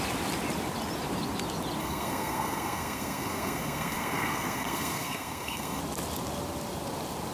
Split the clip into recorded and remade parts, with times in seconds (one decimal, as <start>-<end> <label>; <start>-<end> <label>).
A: 0.0-1.8 recorded; 1.8-5.8 remade; 5.8-7.3 recorded

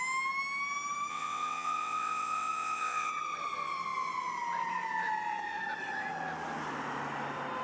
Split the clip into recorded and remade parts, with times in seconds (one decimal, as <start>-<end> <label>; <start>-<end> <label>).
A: 0.0-1.1 recorded; 1.1-3.1 remade; 3.1-7.6 recorded